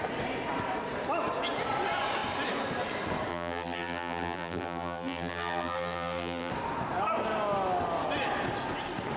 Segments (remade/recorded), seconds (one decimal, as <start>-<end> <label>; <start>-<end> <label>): 0.0-3.3 recorded; 3.3-6.5 remade; 6.5-9.2 recorded